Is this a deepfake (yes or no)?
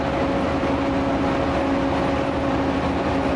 no